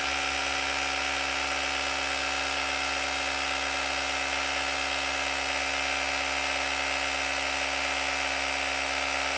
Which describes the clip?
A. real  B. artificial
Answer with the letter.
A